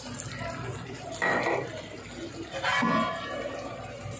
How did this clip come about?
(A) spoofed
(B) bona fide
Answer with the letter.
B